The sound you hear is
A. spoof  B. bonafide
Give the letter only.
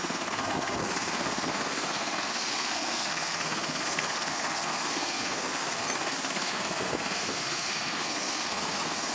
A